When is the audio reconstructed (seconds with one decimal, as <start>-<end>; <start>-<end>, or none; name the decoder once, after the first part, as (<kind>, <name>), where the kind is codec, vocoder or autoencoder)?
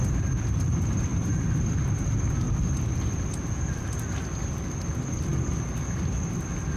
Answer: 1.1-1.8 (vocoder, BigVGAN v2)